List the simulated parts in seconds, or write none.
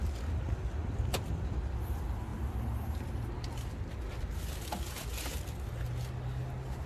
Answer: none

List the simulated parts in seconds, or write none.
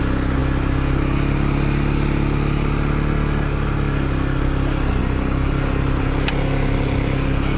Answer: none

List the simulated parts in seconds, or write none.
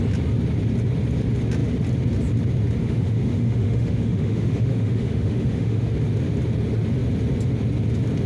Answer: 2.8-5.9 (autoencoder, DAC-VAE)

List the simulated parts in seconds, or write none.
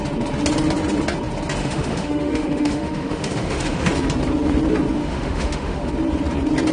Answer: 1.6-3.9 (autoencoder, DAC-VAE); 5.0-5.9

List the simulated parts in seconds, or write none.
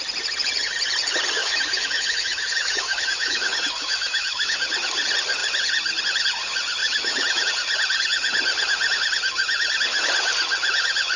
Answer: 1.4-4.7 (autoencoder, DAC-VAE); 6.8-7.5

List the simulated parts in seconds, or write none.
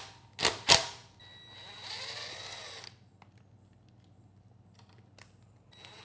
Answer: none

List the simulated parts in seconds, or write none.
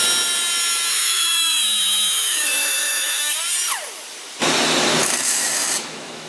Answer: 0.9-3.2 (autoencoder, DAC-VAE); 5.0-6.3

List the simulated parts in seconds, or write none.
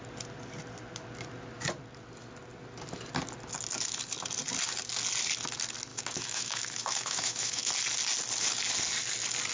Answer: 5.9-7.7 (autoencoder, DAC-VAE)